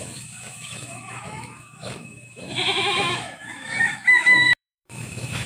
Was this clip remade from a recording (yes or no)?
yes